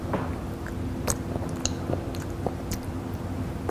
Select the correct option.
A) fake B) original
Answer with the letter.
B